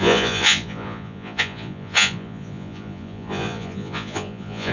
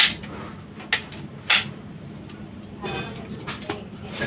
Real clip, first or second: second